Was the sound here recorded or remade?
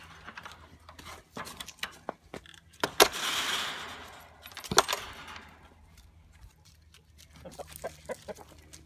recorded